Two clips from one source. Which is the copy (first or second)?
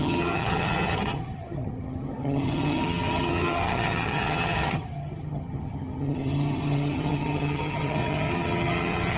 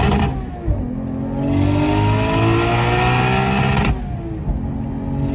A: first